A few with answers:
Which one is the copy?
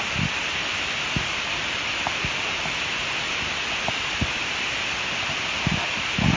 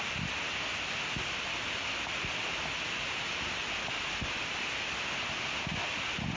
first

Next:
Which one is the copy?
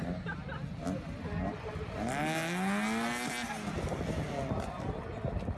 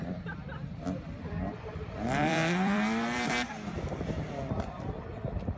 second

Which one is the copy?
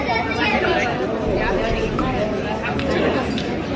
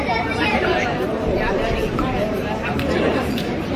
second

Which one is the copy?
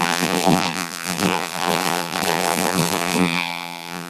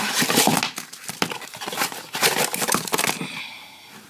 first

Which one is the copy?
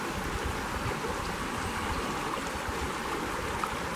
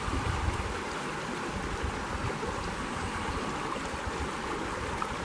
second